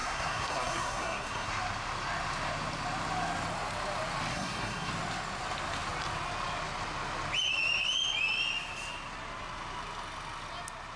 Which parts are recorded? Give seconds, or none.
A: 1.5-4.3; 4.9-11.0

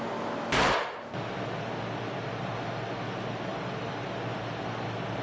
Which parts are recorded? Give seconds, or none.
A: 0.0-5.2

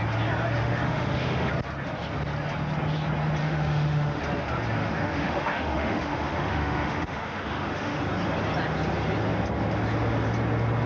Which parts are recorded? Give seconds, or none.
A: 0.0-0.6; 1.5-3.4; 4.2-4.8; 8.0-10.9

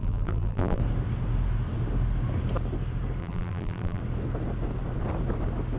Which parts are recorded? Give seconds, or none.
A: 0.8-3.2; 4.0-5.8

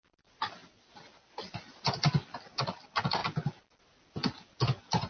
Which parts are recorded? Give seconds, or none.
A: 0.0-5.1

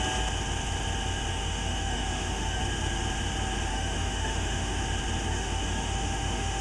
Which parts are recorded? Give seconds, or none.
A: 0.0-1.3; 2.6-3.7; 4.8-5.3